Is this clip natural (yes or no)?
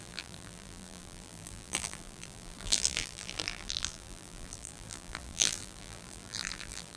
no